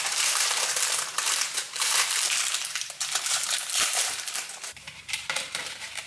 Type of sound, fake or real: fake